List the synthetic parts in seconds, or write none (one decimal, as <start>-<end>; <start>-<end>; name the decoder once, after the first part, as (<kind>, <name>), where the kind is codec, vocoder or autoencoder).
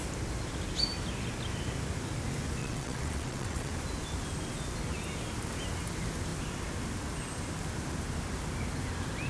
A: 2.6-3.7 (vocoder, WaveNeXt)